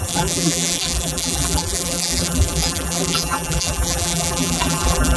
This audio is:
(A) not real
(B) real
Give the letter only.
A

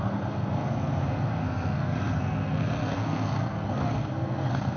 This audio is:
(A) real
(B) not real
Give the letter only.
B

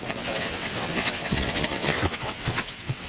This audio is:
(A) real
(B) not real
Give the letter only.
B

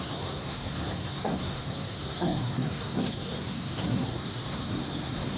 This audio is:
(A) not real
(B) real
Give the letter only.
A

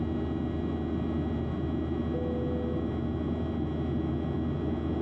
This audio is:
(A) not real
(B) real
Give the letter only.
B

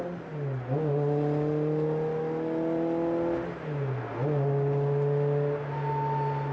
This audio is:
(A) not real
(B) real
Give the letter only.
B